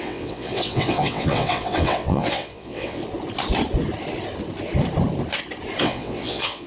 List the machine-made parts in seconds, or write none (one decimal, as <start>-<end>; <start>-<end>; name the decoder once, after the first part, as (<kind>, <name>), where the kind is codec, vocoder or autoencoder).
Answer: 0.0-3.0 (vocoder, WaveNeXt); 5.8-6.7